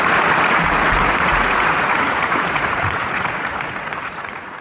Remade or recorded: remade